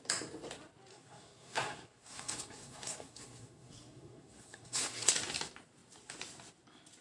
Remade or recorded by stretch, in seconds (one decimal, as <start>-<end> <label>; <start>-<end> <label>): 0.0-0.9 recorded; 0.9-5.1 remade; 5.1-7.0 recorded